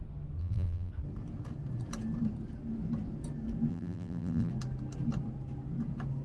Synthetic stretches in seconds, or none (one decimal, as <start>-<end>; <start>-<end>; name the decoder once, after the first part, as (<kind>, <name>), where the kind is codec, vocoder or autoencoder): 0.4-0.9 (vocoder, BigVGAN v2); 3.7-4.5

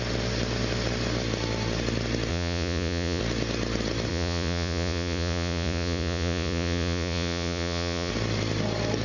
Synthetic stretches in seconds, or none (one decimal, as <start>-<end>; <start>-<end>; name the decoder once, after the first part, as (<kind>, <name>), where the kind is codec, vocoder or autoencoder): 2.3-3.2 (vocoder, Vocos); 4.1-8.1

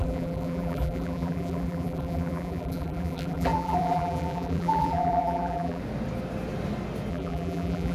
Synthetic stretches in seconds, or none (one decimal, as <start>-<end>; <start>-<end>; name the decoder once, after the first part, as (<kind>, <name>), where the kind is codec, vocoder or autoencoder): 0.0-5.8 (vocoder, BigVGAN v2); 7.1-7.9